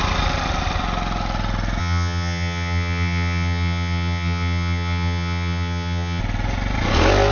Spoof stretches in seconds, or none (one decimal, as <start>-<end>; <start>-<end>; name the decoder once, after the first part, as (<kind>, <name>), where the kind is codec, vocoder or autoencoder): 1.8-6.2 (vocoder, HiFi-GAN)